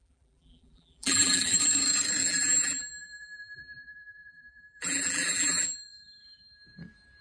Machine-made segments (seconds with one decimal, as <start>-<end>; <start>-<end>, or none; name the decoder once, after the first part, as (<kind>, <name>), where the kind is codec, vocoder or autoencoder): 0.0-1.6 (vocoder, BigVGAN v2); 2.2-5.9